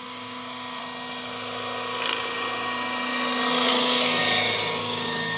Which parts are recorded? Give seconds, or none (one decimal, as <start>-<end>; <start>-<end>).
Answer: 0.8-3.7; 4.2-4.8